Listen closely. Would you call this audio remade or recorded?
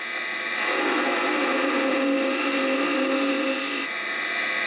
recorded